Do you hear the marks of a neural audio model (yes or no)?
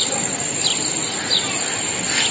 no